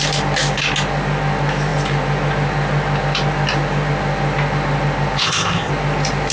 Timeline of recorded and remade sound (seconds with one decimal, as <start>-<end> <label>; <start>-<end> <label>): 0.0-5.2 recorded; 5.2-5.7 remade; 5.7-6.3 recorded